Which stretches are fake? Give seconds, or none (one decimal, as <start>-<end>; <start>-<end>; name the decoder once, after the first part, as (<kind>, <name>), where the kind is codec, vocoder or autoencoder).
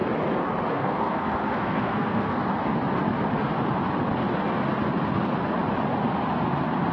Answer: 0.7-2.5 (codec, SNAC)